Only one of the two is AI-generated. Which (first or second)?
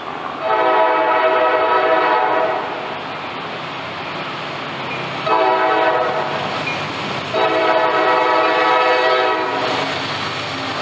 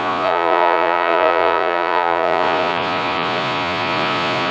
second